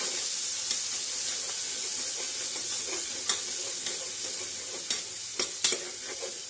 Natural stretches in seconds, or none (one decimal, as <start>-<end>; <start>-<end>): 0.0-2.3; 3.2-6.5